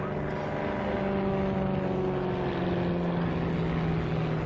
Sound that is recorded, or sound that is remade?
recorded